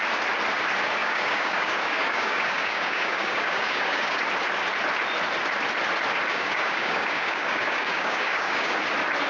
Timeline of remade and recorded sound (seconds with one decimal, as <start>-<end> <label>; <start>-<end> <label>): 0.0-1.0 recorded; 1.0-4.2 remade; 4.2-6.3 recorded; 6.3-8.8 remade; 8.8-9.3 recorded